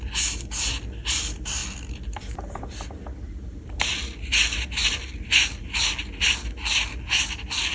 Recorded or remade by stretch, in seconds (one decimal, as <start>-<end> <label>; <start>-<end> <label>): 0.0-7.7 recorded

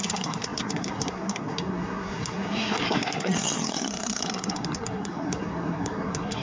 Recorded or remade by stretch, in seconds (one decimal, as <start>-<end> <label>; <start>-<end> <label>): 0.0-6.4 remade

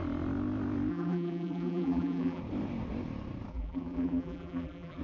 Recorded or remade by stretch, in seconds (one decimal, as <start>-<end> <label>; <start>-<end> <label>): 0.0-0.9 recorded; 0.9-2.4 remade; 2.4-3.5 recorded; 3.5-5.0 remade